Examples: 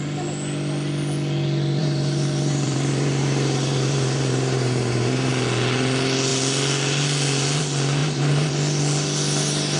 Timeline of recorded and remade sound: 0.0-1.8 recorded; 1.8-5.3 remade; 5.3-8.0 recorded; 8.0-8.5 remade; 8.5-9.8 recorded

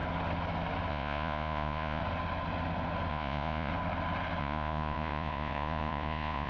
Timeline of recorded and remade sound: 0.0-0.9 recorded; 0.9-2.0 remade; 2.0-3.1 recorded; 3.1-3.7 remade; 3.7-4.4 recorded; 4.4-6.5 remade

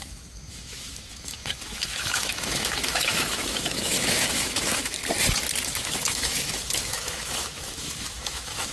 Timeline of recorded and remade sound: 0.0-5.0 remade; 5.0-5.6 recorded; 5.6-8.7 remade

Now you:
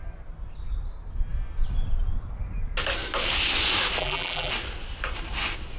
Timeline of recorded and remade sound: 0.0-4.0 recorded; 4.0-4.5 remade; 4.5-5.8 recorded

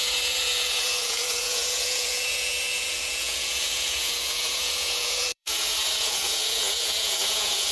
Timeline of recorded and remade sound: 0.0-7.7 remade